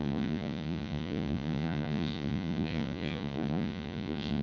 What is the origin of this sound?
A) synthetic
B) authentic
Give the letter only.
A